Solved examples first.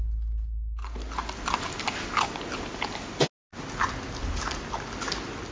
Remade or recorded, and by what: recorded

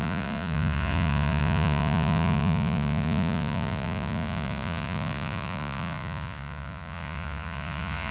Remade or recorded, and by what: remade, vocoder, Vocos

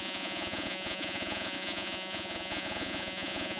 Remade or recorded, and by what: remade, vocoder, Vocos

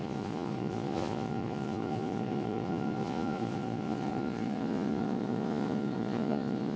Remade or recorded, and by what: remade, vocoder, Vocos